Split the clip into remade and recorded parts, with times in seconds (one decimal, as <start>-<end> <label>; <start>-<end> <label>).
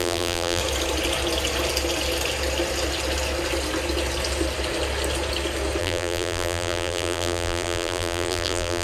0.0-0.6 remade; 0.6-5.8 recorded; 5.8-8.8 remade